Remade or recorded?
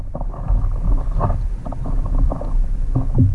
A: recorded